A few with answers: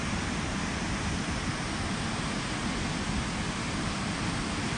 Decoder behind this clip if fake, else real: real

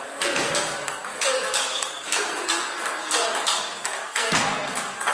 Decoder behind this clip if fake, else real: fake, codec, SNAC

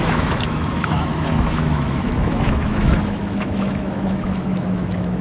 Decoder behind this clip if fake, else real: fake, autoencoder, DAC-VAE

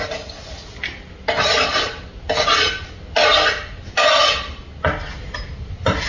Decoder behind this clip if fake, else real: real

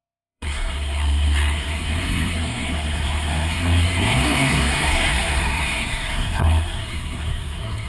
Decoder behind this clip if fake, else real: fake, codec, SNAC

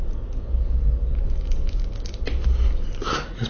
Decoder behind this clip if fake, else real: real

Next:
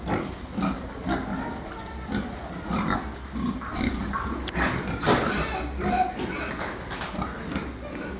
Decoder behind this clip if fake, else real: real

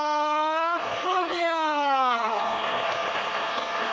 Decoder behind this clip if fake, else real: fake, codec, SNAC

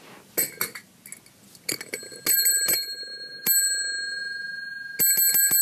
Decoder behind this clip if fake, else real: real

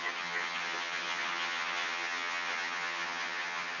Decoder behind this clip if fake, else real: fake, vocoder, HiFi-GAN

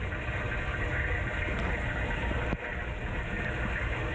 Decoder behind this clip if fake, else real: real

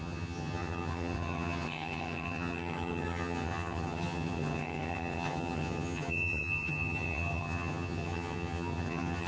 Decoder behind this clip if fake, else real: fake, vocoder, HiFi-GAN